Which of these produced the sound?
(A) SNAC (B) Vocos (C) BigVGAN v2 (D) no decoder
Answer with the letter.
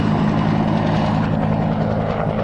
D